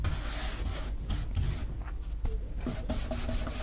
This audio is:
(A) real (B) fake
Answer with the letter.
A